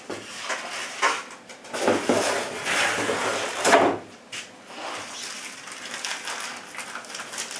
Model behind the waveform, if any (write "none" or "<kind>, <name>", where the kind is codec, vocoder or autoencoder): none